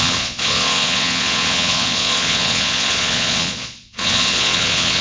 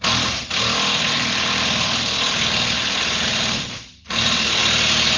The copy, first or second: first